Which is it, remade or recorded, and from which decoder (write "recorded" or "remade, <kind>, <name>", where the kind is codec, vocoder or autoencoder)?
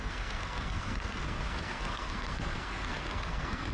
remade, codec, SNAC